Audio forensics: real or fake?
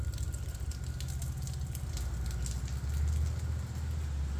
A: real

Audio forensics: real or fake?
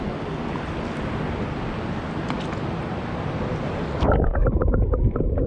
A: real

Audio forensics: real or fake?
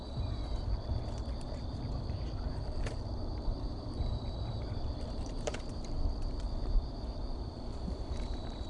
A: fake